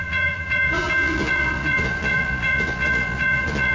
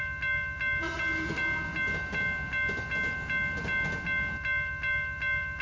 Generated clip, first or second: first